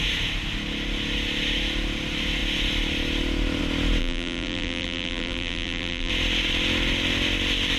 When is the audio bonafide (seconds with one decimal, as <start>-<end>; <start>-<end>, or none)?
0.0-4.0; 6.1-7.8